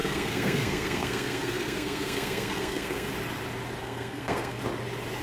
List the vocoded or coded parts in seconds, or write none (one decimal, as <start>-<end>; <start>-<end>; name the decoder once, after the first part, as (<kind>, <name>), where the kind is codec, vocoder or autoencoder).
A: 0.0-3.1 (codec, SNAC); 3.8-4.6